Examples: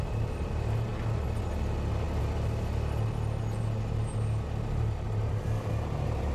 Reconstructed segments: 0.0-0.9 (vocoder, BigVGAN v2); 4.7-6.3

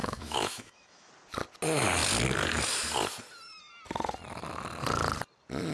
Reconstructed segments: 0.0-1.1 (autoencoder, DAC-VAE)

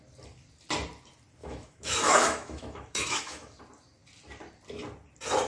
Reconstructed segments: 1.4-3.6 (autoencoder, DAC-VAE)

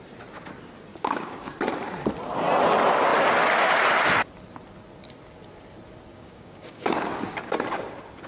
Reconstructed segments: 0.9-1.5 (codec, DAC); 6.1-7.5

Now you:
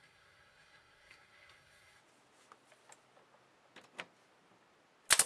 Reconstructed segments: 0.0-2.0 (codec, SNAC)

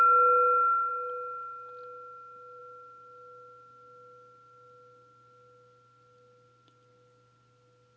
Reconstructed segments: none

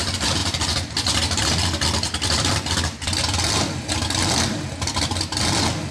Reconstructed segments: none

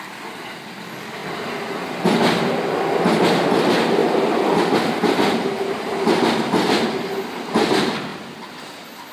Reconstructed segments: 1.2-2.6 (vocoder, BigVGAN v2); 4.0-6.7; 8.1-8.6